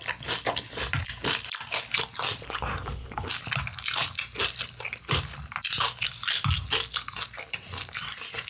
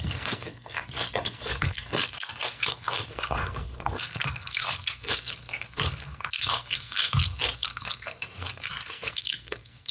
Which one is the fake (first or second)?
second